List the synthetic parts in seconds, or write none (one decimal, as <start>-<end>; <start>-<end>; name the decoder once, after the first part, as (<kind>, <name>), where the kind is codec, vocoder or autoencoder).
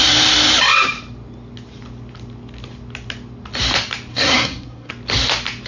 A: 4.1-4.9 (codec, SNAC)